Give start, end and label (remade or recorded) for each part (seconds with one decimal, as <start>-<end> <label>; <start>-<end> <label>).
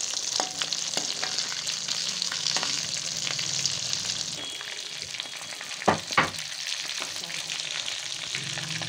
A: 0.0-2.0 recorded; 2.0-2.8 remade; 2.8-8.9 recorded